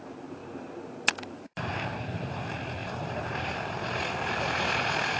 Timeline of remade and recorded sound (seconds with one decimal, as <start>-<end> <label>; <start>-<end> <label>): 0.0-0.4 remade; 0.4-1.3 recorded; 1.3-5.2 remade